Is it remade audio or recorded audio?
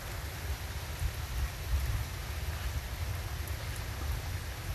recorded